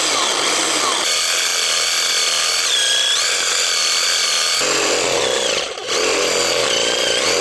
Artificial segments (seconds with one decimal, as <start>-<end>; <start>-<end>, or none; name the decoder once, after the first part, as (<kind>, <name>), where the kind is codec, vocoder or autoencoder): none